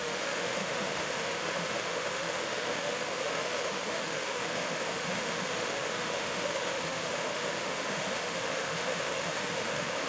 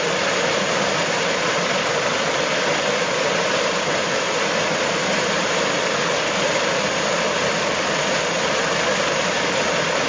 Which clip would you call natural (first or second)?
second